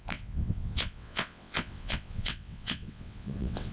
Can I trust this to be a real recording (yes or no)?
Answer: no